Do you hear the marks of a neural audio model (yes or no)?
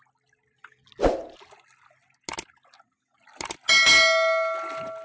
no